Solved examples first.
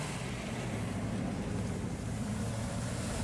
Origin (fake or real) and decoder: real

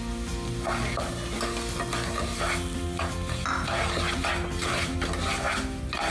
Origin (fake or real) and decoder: real